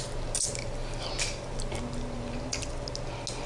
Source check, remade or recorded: recorded